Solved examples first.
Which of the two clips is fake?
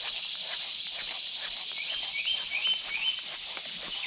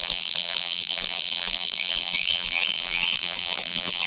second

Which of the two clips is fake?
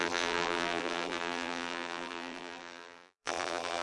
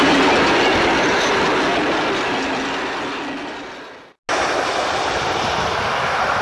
first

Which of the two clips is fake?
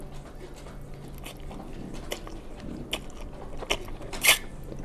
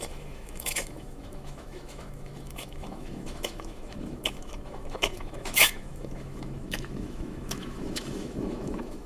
second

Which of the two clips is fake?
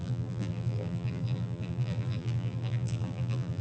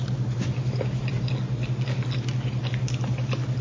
first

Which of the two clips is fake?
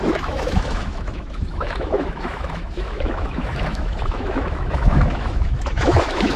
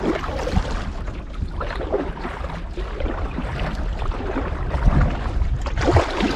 first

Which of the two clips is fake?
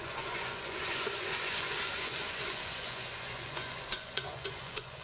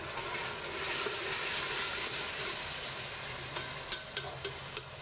first